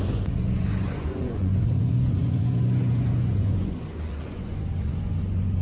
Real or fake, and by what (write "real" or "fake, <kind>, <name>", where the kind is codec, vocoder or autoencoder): fake, vocoder, Vocos